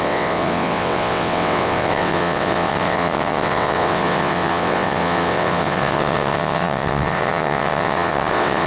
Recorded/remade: remade